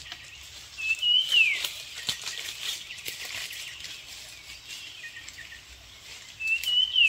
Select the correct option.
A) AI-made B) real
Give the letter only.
B